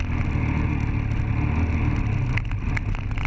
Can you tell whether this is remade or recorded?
recorded